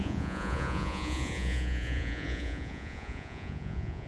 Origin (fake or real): fake